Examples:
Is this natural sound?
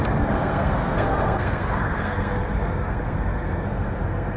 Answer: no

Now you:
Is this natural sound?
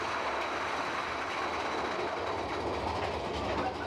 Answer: yes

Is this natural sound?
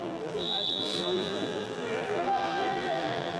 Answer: no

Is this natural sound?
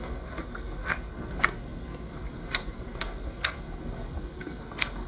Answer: no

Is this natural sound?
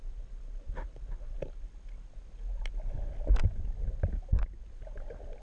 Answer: yes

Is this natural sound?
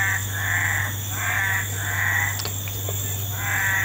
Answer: yes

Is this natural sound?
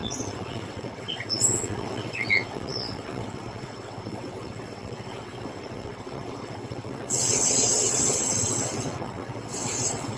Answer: no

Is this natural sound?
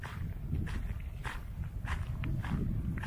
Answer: no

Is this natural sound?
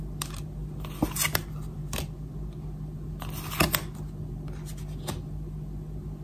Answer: yes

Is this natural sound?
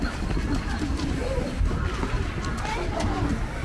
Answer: yes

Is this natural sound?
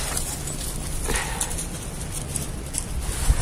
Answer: yes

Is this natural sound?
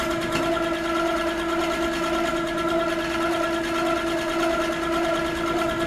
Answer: yes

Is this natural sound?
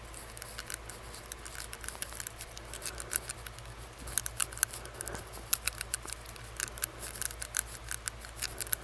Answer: yes